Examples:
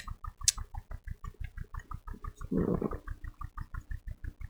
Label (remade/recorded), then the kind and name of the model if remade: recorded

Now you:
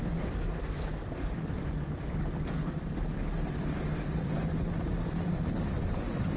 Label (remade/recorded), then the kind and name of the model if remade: remade, vocoder, BigVGAN v2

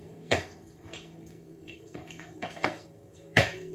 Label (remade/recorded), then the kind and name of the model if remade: remade, codec, SNAC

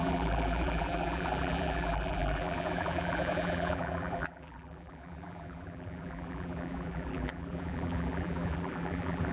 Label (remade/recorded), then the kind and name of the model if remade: remade, vocoder, BigVGAN v2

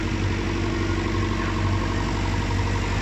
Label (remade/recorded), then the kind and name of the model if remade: recorded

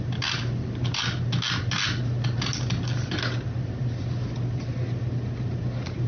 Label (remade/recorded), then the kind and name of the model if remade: recorded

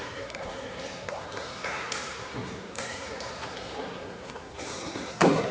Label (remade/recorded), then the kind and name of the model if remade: remade, codec, SNAC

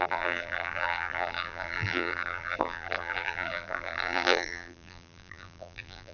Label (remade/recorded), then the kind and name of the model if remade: remade, vocoder, BigVGAN v2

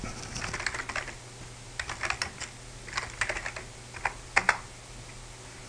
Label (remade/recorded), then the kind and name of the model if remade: recorded